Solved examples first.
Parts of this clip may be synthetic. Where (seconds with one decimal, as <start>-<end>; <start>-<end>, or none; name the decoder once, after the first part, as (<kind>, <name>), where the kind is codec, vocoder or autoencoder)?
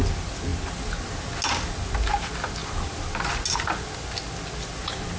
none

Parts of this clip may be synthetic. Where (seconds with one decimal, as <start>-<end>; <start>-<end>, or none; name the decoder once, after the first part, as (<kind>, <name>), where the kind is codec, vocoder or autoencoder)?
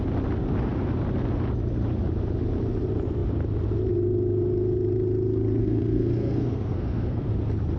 5.6-7.3 (codec, SNAC)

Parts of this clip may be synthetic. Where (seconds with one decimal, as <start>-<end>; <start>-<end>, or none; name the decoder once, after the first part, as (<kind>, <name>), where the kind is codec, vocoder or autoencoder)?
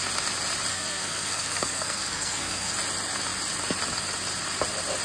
0.7-2.7 (codec, SNAC)